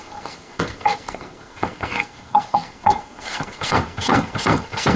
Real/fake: fake